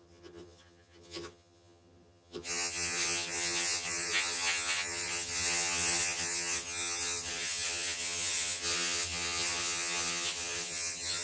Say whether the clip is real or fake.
fake